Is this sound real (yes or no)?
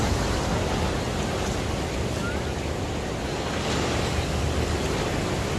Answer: yes